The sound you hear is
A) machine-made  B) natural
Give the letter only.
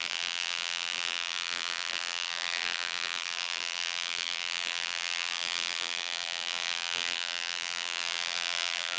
A